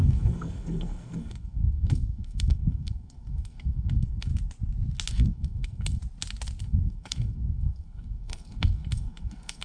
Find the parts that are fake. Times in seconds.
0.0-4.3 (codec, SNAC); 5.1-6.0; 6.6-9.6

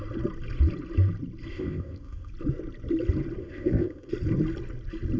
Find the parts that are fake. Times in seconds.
1.5-2.3 (codec, ZipCodec); 3.4-4.1

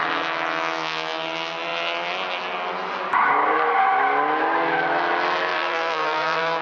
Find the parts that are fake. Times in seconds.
5.5-6.6 (vocoder, BigVGAN v2)